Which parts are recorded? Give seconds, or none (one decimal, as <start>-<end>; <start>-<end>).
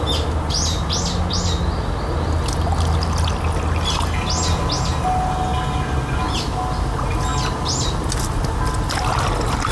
0.0-9.7